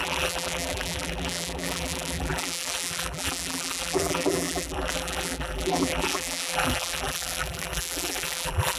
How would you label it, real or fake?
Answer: fake